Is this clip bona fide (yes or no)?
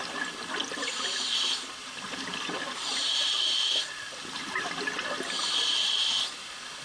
yes